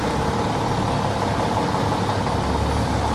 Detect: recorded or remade recorded